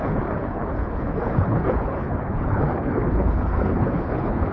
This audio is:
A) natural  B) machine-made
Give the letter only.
B